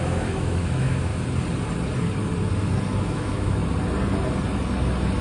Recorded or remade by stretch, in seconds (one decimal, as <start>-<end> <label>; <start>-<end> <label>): 0.0-1.1 remade; 1.1-3.0 recorded; 3.0-3.6 remade; 3.6-5.2 recorded